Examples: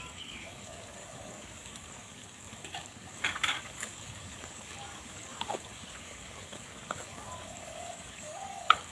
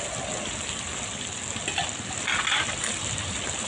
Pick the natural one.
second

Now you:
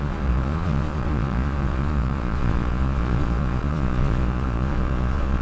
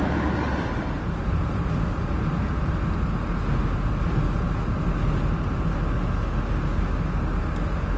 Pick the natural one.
second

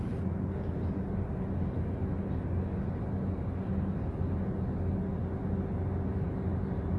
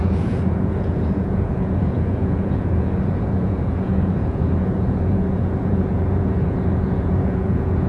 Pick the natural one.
first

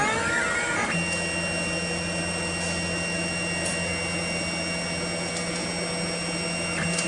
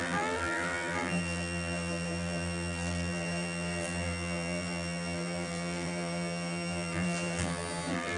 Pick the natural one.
first